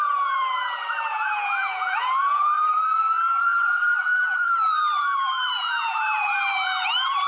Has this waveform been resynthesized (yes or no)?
yes